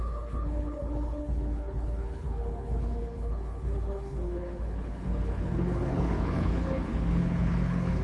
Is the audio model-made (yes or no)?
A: yes